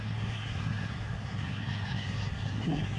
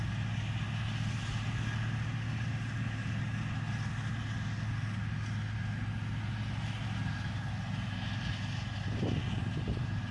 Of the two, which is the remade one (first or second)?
first